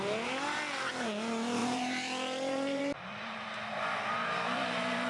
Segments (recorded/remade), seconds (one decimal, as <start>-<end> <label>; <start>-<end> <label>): 0.0-1.6 recorded; 1.6-5.1 remade